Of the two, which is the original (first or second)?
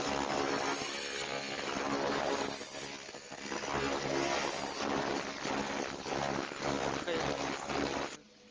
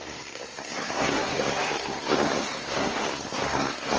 first